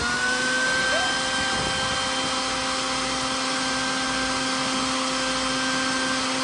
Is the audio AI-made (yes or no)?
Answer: no